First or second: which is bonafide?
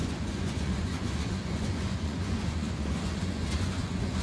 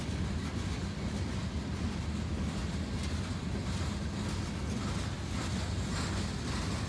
second